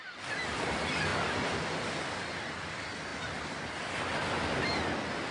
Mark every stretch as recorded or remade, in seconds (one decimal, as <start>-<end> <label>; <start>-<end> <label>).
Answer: 0.0-5.3 recorded